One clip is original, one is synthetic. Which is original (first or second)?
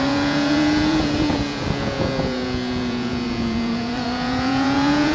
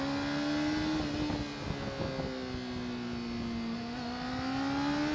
second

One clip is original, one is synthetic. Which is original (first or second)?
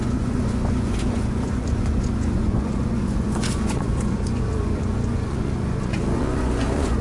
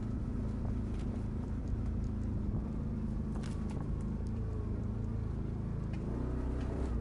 second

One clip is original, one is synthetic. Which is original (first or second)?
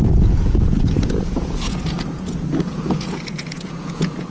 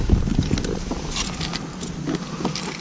second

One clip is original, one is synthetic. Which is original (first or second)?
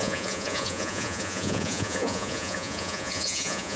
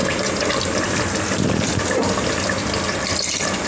second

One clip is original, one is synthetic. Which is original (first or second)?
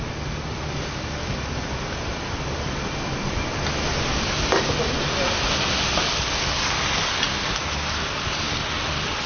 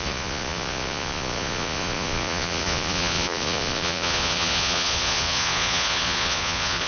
first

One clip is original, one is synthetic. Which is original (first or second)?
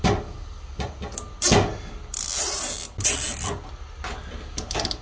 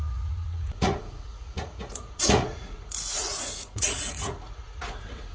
first